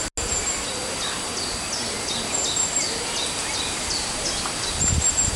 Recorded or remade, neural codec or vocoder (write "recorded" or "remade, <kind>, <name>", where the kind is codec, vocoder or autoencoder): recorded